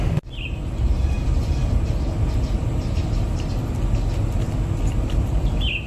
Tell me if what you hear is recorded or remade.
recorded